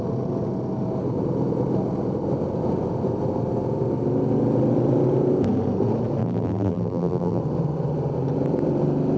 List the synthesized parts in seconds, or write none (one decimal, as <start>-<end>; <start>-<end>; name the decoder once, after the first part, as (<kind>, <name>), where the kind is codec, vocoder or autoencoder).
6.2-7.4 (vocoder, BigVGAN v2)